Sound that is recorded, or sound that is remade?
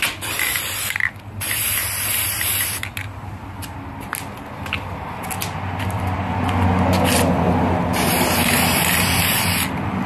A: recorded